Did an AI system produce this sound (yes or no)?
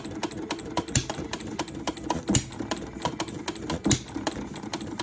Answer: no